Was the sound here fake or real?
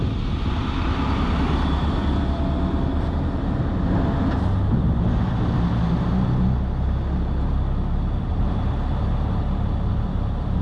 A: real